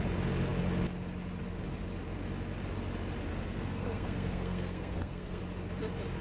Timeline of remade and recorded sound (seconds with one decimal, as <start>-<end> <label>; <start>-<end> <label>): 0.0-3.3 recorded; 3.3-5.4 remade; 5.4-6.2 recorded